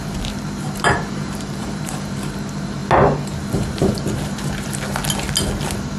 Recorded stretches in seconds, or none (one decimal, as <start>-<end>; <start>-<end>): 2.8-3.5; 5.0-6.0